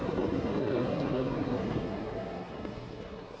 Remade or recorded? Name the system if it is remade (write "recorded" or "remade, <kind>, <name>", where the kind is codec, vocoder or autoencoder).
remade, codec, SNAC